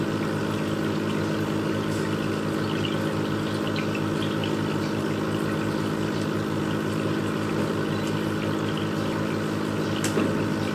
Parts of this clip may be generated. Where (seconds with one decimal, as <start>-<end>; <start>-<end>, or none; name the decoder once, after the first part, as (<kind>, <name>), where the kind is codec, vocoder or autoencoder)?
0.4-1.2 (vocoder, BigVGAN v2)